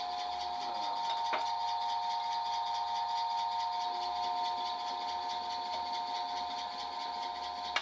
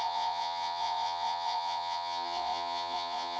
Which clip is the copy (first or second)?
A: second